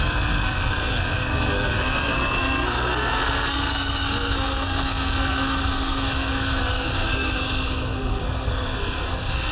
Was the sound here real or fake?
fake